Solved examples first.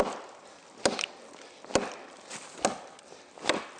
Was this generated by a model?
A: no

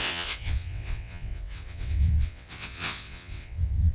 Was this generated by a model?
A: yes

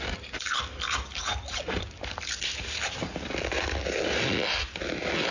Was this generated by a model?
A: no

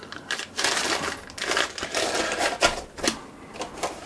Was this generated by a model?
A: no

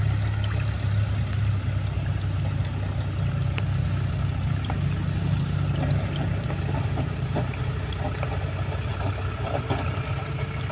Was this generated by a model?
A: no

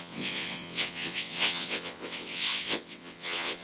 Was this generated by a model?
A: yes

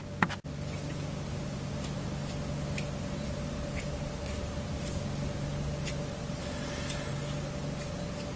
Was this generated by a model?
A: no